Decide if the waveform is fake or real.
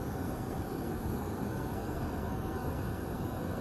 fake